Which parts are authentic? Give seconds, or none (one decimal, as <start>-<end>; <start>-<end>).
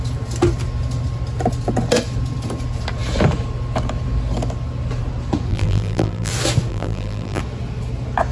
0.0-5.5; 6.3-6.7; 7.4-8.3